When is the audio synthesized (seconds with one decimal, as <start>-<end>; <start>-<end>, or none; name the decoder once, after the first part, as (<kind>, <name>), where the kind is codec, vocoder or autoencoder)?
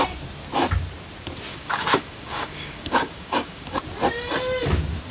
1.5-3.8 (codec, DAC)